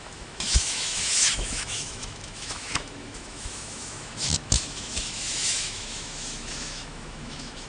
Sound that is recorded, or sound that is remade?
remade